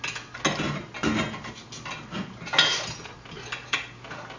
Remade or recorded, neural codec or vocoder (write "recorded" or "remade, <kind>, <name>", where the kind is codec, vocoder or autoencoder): recorded